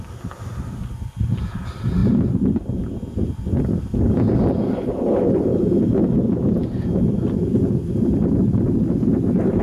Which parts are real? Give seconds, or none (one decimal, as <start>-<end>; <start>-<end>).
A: 0.0-9.6